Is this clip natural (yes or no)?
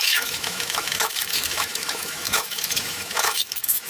no